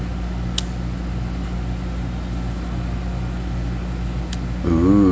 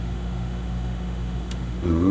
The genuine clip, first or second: first